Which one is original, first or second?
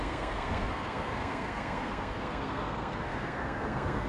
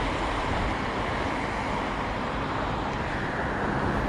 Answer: second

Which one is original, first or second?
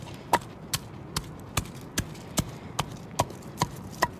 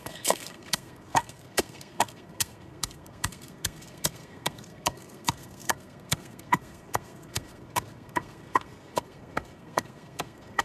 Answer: first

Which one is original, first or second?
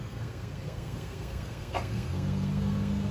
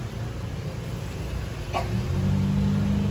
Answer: second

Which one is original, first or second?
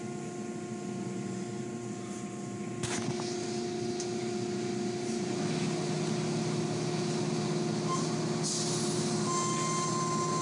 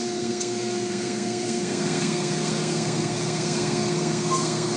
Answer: first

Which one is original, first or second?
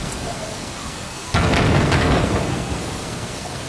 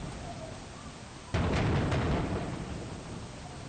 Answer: second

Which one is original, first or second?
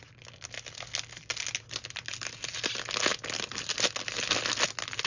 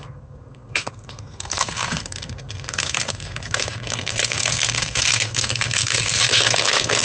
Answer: first